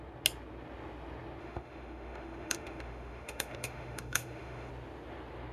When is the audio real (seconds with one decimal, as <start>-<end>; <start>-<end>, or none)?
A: 0.0-1.4; 4.7-5.5